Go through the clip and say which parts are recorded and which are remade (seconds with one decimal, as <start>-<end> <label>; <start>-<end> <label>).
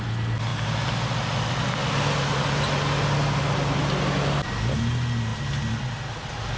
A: 0.0-6.6 recorded